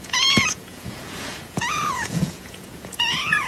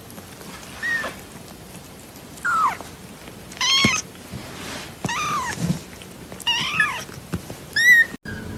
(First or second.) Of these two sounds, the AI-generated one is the first